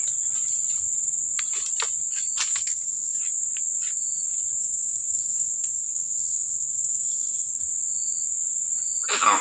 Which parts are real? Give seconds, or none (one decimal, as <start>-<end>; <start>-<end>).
0.0-2.5; 3.2-4.6; 7.6-9.4